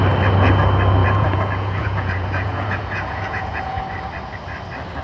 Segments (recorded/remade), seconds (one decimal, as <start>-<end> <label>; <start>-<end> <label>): 0.0-1.0 recorded; 1.0-3.8 remade; 3.8-5.0 recorded

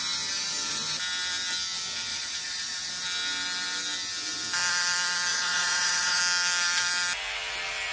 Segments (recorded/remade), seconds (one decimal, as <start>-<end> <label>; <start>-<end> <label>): 0.0-2.1 recorded; 2.1-2.9 remade; 2.9-5.3 recorded; 5.3-6.2 remade; 6.2-7.9 recorded

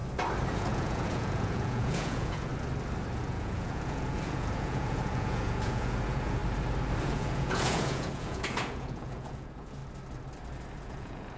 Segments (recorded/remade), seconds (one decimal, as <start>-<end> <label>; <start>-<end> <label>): 0.0-0.5 recorded; 0.5-2.5 remade; 2.5-3.2 recorded; 3.2-6.4 remade; 6.4-7.0 recorded; 7.0-9.8 remade; 9.8-10.8 recorded; 10.8-11.4 remade

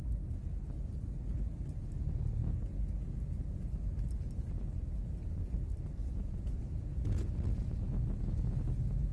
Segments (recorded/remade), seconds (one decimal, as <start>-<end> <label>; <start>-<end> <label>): 0.0-6.0 recorded; 6.0-7.3 remade; 7.3-9.1 recorded

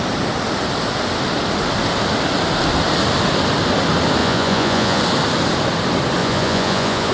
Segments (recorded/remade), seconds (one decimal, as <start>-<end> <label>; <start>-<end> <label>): 0.0-4.2 recorded; 4.2-5.0 remade; 5.0-6.2 recorded; 6.2-7.1 remade

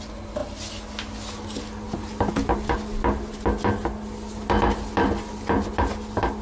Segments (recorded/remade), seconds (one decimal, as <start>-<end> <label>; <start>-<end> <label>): 0.0-6.4 recorded

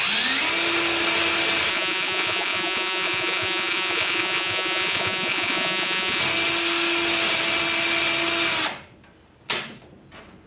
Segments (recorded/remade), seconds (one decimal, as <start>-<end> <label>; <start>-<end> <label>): 0.0-1.7 recorded; 1.7-6.2 remade; 6.2-10.5 recorded